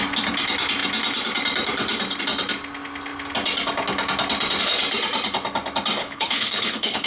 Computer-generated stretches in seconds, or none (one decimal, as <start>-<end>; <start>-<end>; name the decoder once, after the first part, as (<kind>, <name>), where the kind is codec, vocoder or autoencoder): 6.0-7.1 (codec, HILCodec)